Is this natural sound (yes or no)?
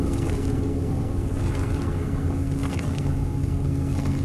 no